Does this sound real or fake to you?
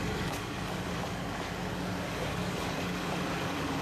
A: fake